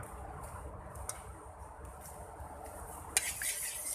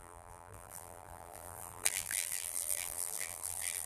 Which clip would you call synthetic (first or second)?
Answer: second